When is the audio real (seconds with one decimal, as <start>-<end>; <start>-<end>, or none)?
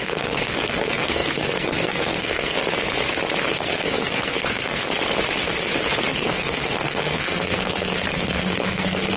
2.6-3.5; 4.8-6.1